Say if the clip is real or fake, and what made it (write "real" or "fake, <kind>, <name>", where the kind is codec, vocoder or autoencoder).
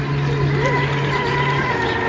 real